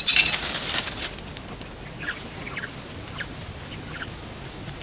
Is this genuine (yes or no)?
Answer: yes